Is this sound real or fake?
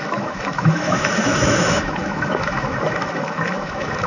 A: fake